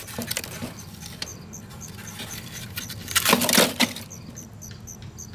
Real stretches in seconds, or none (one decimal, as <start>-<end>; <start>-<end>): 0.0-5.3